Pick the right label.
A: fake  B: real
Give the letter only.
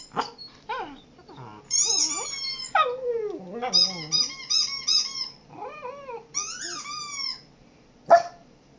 B